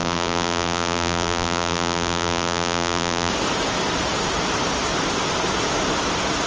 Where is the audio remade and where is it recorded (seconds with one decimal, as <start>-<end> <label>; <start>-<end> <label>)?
0.0-3.3 remade; 3.3-6.5 recorded